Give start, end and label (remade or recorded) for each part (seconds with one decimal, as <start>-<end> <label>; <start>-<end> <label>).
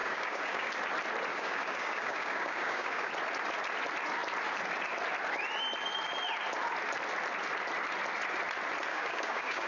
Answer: 0.0-0.7 remade; 0.7-1.3 recorded; 1.3-3.1 remade; 3.1-8.9 recorded; 8.9-9.7 remade